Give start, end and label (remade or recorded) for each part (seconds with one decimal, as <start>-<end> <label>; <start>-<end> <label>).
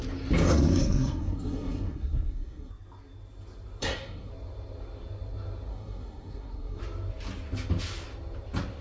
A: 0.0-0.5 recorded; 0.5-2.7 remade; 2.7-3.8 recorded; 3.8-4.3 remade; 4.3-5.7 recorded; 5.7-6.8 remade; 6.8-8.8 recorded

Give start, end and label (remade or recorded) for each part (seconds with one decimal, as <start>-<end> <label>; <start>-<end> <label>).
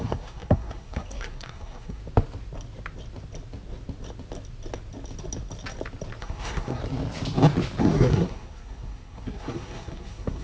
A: 0.0-2.0 remade; 2.0-6.2 recorded; 6.2-6.8 remade; 6.8-7.8 recorded; 7.8-10.4 remade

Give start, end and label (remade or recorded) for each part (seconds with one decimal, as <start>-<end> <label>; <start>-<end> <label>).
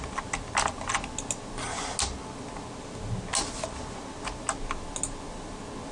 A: 0.0-5.9 recorded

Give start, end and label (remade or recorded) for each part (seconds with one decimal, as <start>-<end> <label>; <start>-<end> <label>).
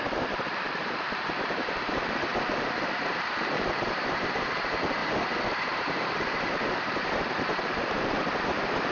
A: 0.0-5.0 remade; 5.0-5.6 recorded; 5.6-8.9 remade